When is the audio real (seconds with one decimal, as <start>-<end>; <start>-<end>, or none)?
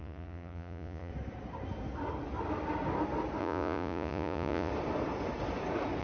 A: 1.1-3.4; 4.7-6.0